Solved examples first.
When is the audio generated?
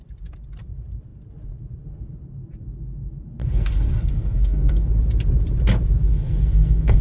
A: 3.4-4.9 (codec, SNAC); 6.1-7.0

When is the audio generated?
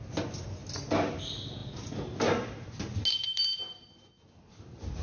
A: none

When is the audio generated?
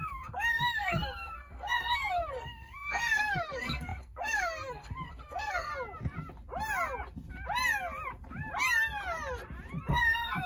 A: 0.0-5.7 (codec, SNAC); 9.9-10.5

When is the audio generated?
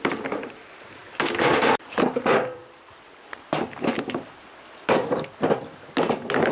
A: 0.0-1.0 (vocoder, BigVGAN v2); 2.2-6.5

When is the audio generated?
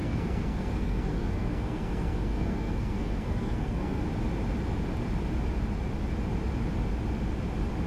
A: 0.0-4.0 (codec, SNAC)